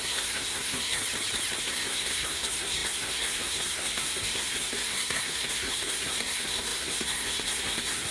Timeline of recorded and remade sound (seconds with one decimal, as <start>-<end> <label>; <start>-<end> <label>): 0.0-1.0 remade; 1.0-1.6 recorded; 1.6-8.1 remade